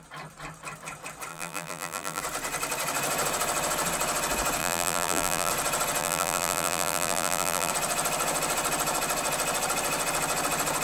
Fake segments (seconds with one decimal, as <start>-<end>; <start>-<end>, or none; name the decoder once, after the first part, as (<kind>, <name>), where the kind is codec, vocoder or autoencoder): 1.3-2.2 (vocoder, BigVGAN v2); 4.6-5.5; 6.0-7.7